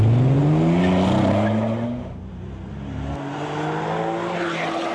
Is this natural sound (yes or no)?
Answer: yes